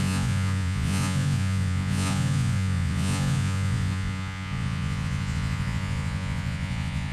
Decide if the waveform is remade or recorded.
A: remade